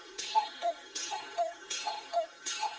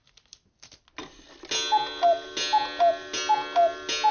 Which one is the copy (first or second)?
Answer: first